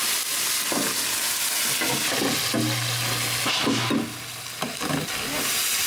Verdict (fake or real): real